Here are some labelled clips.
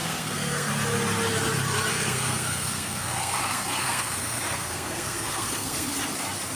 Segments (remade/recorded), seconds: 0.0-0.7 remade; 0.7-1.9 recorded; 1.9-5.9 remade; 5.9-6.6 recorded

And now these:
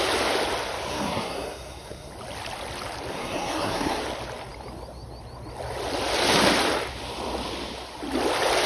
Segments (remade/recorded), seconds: 0.0-0.9 recorded; 0.9-2.1 remade; 2.1-3.1 recorded; 3.1-4.0 remade; 4.0-8.7 recorded

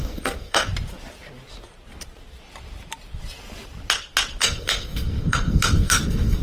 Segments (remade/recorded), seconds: 0.0-0.7 remade; 0.7-4.4 recorded; 4.4-6.4 remade

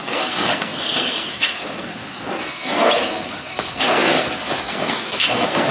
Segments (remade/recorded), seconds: 0.0-5.7 remade

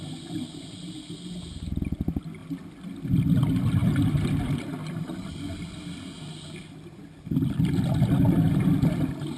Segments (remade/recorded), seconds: 0.0-9.4 recorded

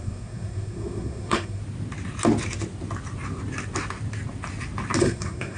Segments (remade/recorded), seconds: 0.0-1.6 remade; 1.6-5.0 recorded; 5.0-5.6 remade